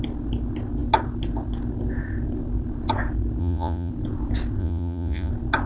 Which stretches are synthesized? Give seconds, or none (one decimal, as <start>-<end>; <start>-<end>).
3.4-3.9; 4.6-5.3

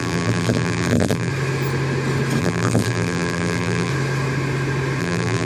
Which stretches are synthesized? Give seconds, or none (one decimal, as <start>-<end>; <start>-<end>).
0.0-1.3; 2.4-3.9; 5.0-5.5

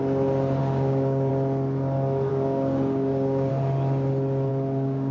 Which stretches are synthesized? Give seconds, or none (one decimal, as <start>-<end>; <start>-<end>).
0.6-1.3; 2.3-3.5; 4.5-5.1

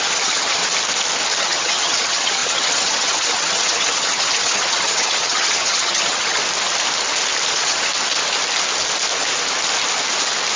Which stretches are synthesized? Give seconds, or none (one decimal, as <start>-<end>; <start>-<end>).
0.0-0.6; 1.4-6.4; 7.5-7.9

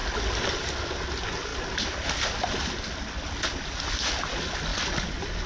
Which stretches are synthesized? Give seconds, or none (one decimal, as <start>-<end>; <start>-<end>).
none

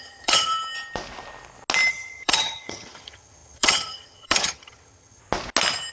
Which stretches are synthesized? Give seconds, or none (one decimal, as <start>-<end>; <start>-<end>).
0.0-0.5; 1.9-5.2

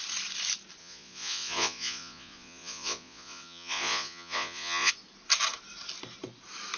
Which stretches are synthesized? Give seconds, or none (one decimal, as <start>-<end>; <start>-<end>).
0.8-4.9

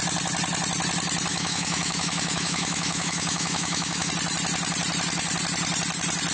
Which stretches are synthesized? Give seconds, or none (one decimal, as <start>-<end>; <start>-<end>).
1.3-4.1